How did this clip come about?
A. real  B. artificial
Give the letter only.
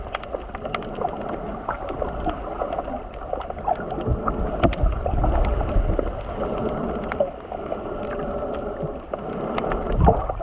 A